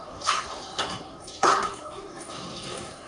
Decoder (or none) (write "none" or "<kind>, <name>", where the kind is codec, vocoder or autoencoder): codec, SNAC